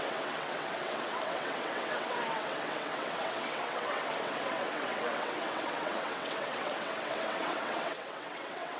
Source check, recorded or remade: remade